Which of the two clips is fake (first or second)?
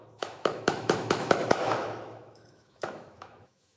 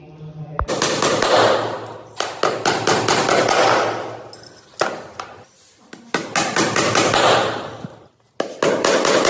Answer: first